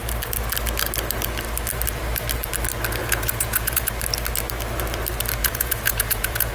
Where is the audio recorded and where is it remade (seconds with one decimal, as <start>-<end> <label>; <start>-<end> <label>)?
0.0-3.0 recorded; 3.0-3.9 remade; 3.9-5.4 recorded; 5.4-6.5 remade